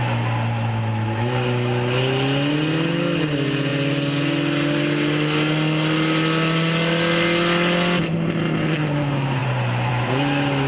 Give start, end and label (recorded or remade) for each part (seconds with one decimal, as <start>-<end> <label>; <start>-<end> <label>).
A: 0.0-10.7 recorded